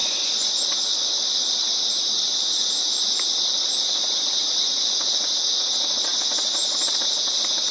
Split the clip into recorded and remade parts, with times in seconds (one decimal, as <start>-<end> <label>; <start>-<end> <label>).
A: 0.0-0.6 remade; 0.6-7.7 recorded